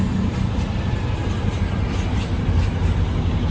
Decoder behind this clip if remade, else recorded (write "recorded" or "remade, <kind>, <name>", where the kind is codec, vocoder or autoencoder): recorded